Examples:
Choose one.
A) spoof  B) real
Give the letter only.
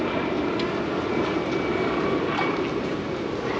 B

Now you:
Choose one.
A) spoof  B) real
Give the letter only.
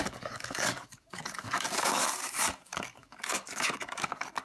A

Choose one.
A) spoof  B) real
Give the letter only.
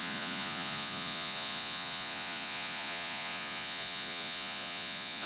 A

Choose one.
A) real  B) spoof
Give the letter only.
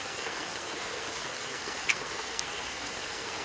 B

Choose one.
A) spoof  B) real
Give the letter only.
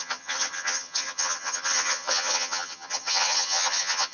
A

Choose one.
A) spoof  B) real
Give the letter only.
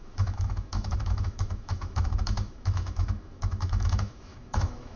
A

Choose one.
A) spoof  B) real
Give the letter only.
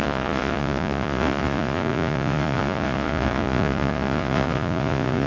A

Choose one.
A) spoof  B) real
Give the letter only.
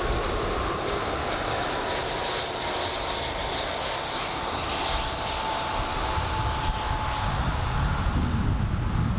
B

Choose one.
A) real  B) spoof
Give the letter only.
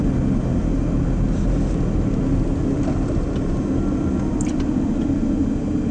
A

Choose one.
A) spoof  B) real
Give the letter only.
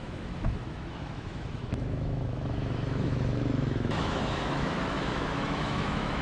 A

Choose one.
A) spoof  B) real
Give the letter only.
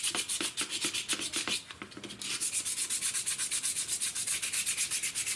B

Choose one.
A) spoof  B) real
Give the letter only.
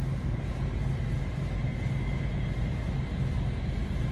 B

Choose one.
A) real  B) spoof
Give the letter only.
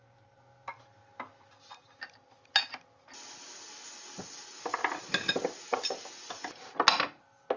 A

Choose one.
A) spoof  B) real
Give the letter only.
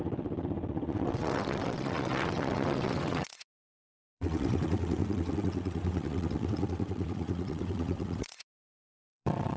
A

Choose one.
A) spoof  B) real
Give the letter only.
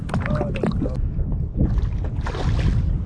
B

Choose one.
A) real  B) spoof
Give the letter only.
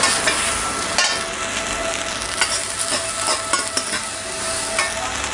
A